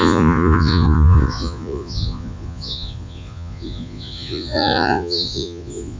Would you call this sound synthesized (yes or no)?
yes